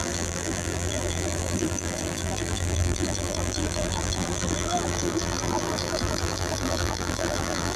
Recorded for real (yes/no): no